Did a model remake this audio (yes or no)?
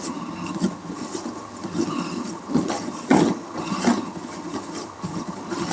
yes